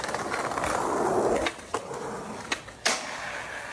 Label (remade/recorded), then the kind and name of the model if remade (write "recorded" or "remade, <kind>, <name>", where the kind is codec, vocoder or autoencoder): recorded